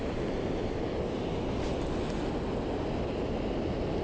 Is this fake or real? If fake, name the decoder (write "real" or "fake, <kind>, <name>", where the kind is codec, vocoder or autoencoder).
real